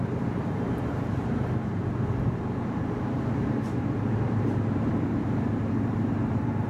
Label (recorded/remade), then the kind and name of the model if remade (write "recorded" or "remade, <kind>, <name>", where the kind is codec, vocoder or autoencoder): remade, vocoder, BigVGAN v2